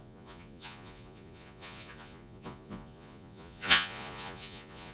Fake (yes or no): yes